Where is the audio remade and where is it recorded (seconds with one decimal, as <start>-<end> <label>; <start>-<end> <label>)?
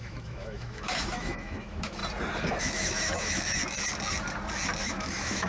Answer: 0.0-2.0 remade; 2.0-2.6 recorded; 2.6-3.6 remade; 3.6-4.8 recorded; 4.8-5.5 remade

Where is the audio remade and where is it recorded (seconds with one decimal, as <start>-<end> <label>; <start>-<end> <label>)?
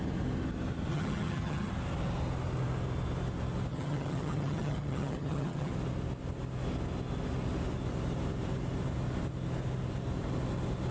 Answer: 0.0-0.9 recorded; 0.9-1.7 remade; 1.7-3.7 recorded; 3.7-5.7 remade; 5.7-10.9 recorded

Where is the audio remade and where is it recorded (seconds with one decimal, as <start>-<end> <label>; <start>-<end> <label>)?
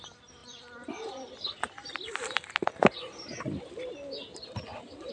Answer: 0.0-4.3 recorded; 4.3-5.1 remade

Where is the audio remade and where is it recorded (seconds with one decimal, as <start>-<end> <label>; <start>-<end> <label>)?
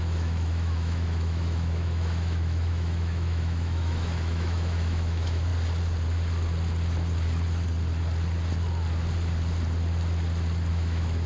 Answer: 0.0-5.5 remade; 5.5-10.7 recorded; 10.7-11.3 remade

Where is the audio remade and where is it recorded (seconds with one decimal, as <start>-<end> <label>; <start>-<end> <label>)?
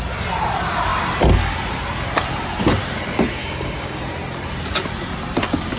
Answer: 0.0-3.4 recorded; 3.4-4.0 remade; 4.0-5.8 recorded